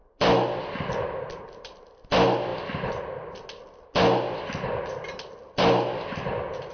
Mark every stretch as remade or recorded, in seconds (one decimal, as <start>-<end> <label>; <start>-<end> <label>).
0.0-6.7 recorded